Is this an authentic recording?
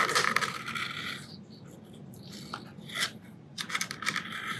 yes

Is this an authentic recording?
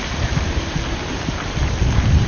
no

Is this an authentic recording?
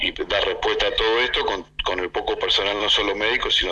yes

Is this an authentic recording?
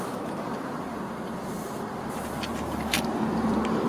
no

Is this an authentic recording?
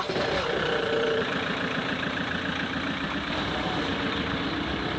no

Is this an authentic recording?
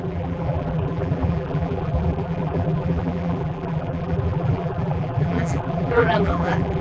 no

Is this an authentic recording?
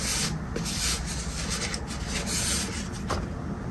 yes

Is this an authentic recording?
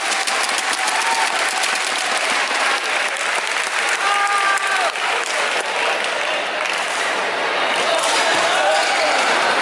no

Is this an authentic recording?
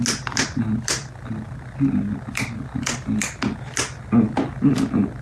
yes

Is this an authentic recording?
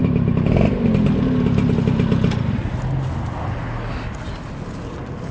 yes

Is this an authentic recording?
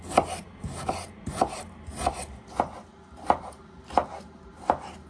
yes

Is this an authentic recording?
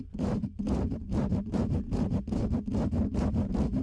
no